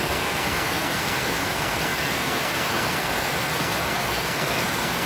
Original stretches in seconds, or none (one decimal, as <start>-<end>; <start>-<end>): none